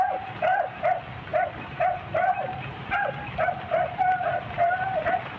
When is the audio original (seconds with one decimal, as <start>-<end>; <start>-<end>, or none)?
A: 0.0-5.4